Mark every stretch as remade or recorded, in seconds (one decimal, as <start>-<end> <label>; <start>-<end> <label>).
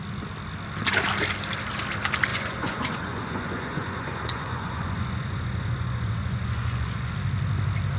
0.0-2.3 recorded; 2.3-7.1 remade; 7.1-8.0 recorded